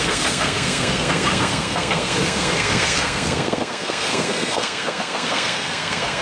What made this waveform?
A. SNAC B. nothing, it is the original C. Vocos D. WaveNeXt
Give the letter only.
A